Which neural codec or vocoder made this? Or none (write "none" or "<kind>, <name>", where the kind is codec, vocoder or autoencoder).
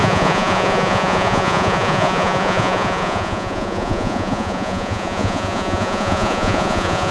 vocoder, Vocos